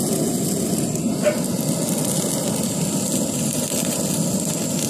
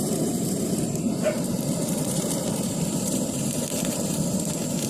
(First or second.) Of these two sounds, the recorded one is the first